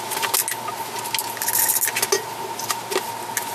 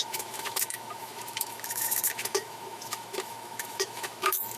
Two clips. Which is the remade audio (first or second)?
second